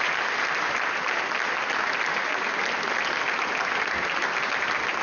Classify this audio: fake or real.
real